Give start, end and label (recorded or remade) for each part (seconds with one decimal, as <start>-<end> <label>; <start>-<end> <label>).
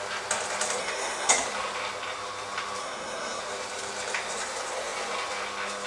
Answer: 0.0-0.8 recorded; 0.8-1.3 remade; 1.3-2.8 recorded; 2.8-3.4 remade; 3.4-5.9 recorded